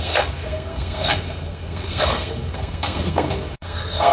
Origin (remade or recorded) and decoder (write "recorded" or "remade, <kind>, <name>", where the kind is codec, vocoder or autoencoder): remade, codec, SNAC